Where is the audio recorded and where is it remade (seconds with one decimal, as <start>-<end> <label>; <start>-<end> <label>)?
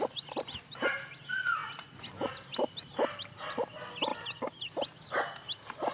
0.0-5.9 recorded